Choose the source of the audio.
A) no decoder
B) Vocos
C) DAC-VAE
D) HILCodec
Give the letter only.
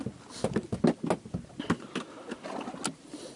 A